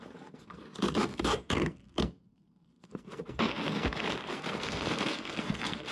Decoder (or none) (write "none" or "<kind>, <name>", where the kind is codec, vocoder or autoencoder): codec, SNAC